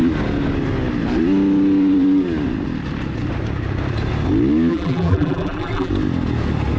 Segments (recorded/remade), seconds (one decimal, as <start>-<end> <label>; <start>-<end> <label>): 0.0-4.7 recorded; 4.7-5.9 remade; 5.9-6.8 recorded